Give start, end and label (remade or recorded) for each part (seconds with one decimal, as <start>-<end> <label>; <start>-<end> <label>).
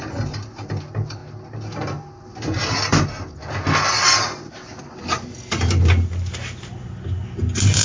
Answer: 0.0-7.8 recorded